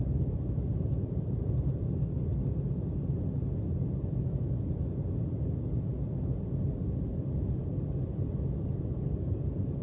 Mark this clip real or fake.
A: real